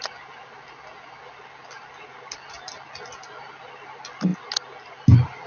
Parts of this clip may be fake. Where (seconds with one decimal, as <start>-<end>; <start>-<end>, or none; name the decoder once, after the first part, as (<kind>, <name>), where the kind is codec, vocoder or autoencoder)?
none